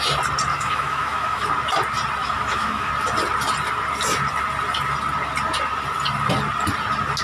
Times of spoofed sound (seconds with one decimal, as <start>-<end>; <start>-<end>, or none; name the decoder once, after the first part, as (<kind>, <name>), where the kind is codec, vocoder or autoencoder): 0.5-1.5 (autoencoder, DAC-VAE); 2.2-2.9